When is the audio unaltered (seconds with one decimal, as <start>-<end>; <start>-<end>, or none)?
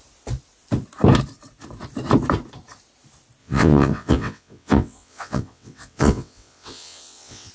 0.0-3.4